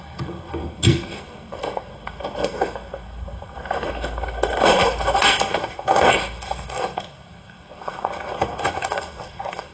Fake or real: fake